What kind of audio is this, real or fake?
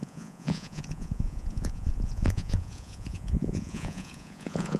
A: fake